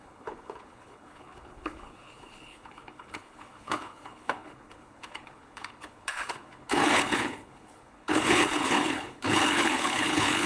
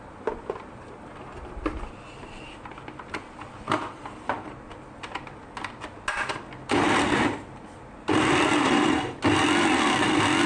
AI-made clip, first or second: first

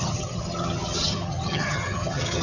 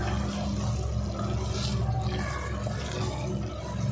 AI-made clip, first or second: first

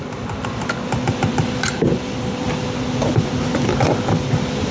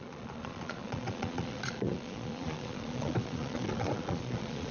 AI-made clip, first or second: second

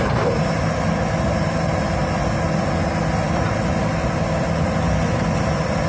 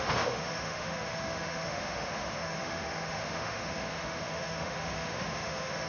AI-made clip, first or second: second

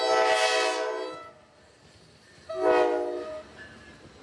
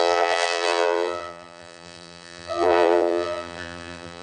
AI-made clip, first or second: second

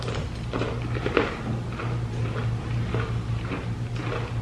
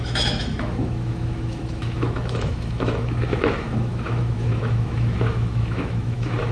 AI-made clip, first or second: second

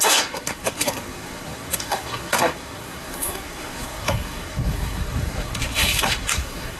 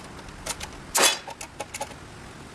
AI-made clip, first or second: first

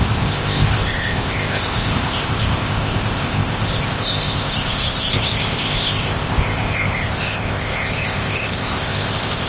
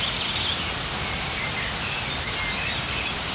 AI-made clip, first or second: first